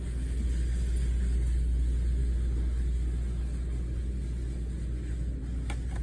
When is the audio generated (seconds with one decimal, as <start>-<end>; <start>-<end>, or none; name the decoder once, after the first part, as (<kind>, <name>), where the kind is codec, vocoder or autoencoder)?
none